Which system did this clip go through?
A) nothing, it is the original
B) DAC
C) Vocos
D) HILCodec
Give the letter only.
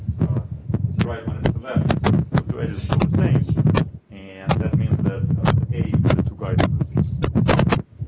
A